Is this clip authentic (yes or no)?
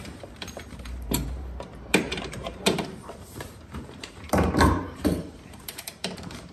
no